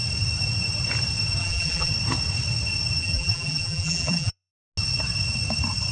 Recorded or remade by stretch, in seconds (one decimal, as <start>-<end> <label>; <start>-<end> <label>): 0.0-1.4 recorded; 1.4-1.9 remade; 1.9-3.0 recorded; 3.0-4.5 remade; 4.5-5.9 recorded